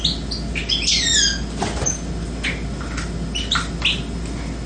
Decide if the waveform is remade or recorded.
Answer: recorded